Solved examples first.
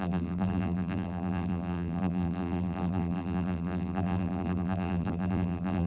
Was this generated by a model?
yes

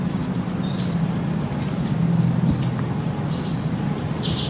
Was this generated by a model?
yes